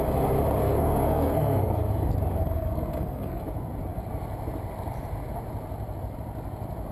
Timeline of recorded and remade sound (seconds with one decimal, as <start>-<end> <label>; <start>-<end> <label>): 0.0-0.6 recorded; 0.6-1.9 remade; 1.9-2.4 recorded; 2.4-3.4 remade; 3.4-6.9 recorded